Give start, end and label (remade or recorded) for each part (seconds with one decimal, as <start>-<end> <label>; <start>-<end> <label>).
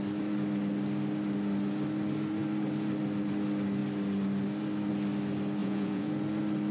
0.0-5.6 recorded; 5.6-6.1 remade; 6.1-6.7 recorded